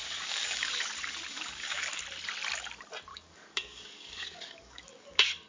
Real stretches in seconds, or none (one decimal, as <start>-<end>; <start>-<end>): 0.7-1.3; 2.0-3.1